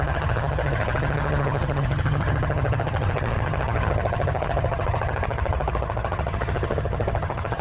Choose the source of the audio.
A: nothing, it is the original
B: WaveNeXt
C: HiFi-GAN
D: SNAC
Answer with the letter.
C